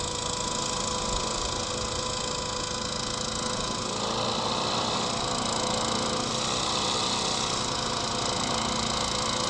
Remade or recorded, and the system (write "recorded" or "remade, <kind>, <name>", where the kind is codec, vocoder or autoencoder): recorded